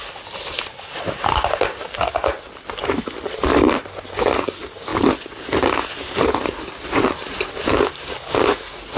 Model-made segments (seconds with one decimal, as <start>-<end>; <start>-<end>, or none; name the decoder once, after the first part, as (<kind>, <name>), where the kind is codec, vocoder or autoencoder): none